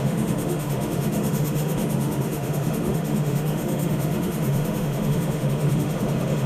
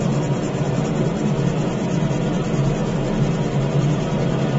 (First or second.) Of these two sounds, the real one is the second